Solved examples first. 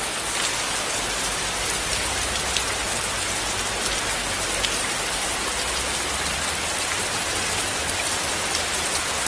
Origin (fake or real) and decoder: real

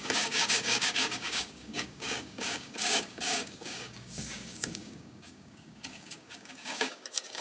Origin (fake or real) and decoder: fake, codec, DAC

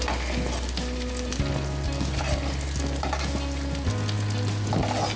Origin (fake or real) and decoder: real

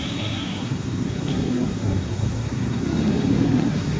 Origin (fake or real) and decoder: fake, codec, SNAC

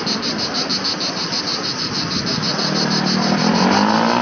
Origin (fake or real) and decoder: real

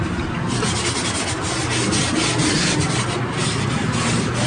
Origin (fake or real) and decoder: real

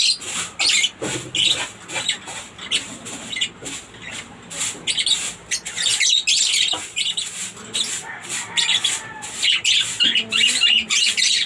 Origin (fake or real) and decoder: real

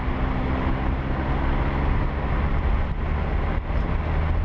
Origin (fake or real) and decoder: real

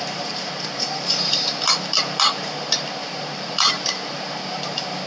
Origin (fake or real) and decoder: fake, vocoder, BigVGAN v2